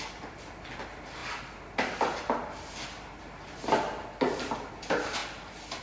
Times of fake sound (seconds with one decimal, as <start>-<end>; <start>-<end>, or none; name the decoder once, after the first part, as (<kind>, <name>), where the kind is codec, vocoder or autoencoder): none